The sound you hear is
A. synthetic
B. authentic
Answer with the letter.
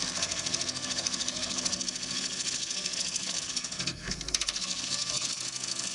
A